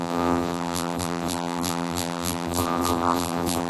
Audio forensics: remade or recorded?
remade